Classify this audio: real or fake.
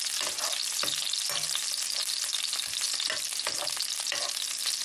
real